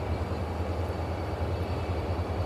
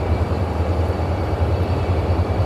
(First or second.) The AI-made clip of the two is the second